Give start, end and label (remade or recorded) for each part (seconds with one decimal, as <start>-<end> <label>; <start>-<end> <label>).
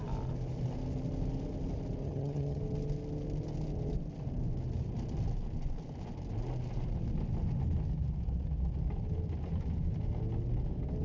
0.0-2.0 recorded; 2.0-2.6 remade; 2.6-11.0 recorded